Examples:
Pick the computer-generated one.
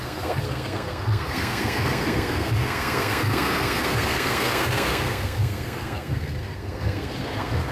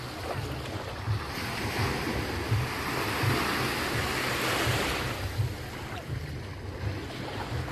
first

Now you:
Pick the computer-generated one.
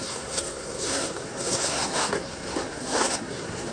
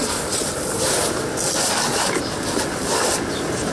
first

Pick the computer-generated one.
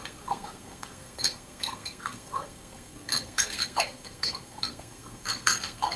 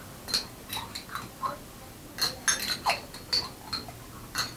first